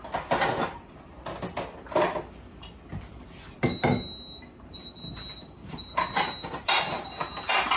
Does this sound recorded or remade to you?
recorded